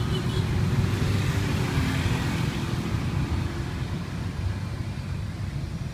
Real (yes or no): yes